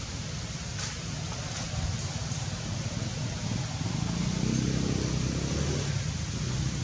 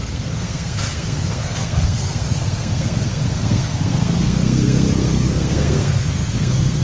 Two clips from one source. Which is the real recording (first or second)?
first